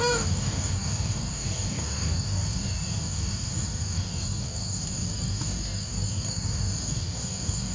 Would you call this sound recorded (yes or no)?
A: no